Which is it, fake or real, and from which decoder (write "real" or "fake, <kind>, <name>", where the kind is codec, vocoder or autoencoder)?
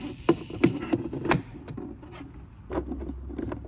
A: real